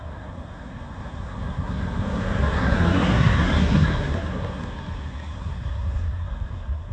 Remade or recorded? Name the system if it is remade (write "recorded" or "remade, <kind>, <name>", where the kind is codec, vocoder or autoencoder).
remade, codec, SNAC